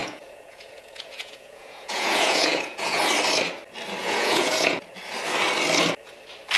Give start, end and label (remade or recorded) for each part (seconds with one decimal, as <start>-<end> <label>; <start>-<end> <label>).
0.0-3.0 remade; 3.0-4.0 recorded; 4.0-4.9 remade; 4.9-6.6 recorded